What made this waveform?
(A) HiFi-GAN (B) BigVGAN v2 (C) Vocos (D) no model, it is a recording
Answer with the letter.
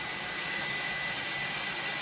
D